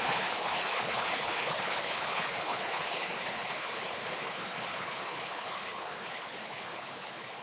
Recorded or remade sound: remade